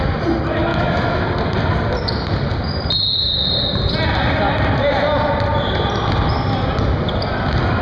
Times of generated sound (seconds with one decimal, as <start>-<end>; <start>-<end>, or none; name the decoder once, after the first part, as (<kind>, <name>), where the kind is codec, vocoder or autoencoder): 0.7-1.2 (autoencoder, DAC-VAE)